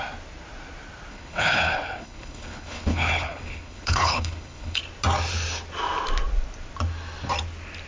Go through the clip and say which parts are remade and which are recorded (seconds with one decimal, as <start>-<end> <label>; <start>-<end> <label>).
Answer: 0.0-1.1 recorded; 1.1-4.8 remade; 4.8-7.9 recorded